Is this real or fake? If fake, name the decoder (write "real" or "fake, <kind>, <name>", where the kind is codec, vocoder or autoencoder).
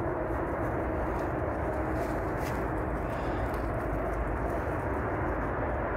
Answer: real